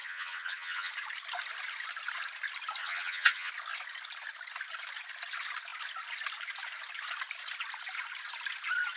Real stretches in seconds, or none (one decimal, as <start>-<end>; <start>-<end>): 0.9-2.8; 3.5-9.0